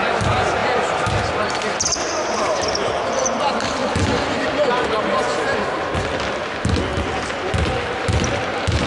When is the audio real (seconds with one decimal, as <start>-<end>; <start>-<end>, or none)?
0.0-8.9